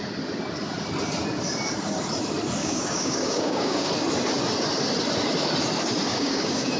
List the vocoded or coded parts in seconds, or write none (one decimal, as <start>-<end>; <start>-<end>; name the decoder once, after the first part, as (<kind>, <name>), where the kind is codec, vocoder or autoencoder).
2.6-3.9 (codec, DAC); 6.1-6.8